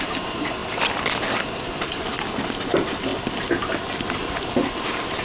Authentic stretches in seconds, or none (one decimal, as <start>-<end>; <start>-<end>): 0.6-1.5; 2.1-2.7; 3.1-4.1

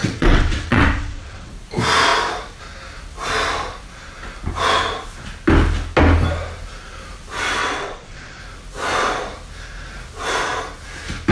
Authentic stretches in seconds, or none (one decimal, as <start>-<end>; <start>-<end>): 1.5-7.6; 8.4-11.3

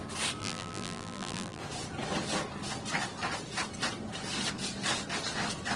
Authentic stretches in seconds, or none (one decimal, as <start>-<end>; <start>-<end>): 0.0-0.4; 1.6-5.8

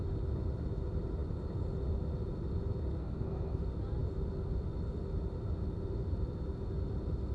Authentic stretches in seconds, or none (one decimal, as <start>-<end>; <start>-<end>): 0.0-3.0; 3.6-7.3